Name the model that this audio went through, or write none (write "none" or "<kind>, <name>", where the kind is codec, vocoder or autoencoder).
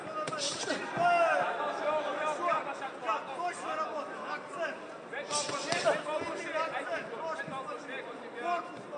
none